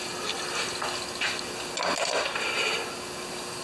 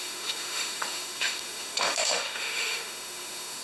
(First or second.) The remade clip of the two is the second